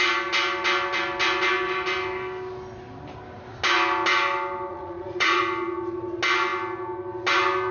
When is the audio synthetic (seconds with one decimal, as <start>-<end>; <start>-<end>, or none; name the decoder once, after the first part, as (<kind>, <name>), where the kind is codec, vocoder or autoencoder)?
4.7-5.4 (vocoder, Vocos)